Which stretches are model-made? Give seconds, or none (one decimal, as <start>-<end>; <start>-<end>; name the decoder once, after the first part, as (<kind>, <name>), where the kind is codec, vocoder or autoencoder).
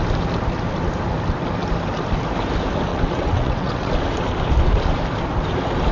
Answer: 2.9-3.9 (vocoder, WaveNeXt)